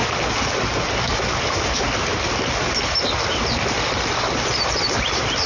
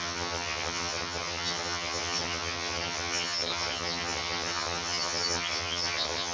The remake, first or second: second